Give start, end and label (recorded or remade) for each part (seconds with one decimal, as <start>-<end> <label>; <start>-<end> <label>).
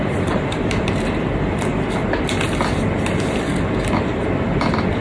0.0-1.7 remade; 1.7-5.0 recorded